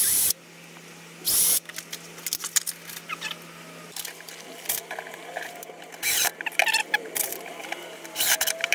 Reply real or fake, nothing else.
real